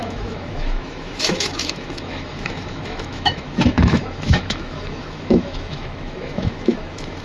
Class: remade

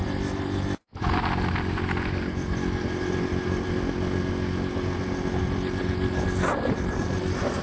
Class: recorded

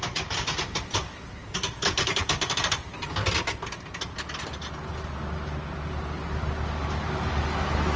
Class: recorded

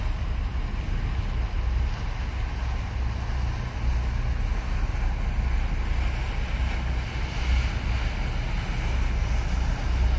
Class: recorded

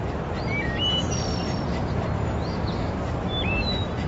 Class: recorded